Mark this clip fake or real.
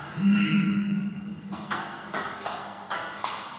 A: fake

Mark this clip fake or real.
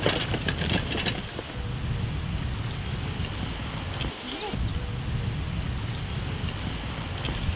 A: real